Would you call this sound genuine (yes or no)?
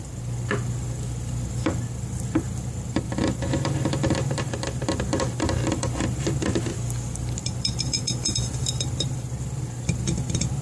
no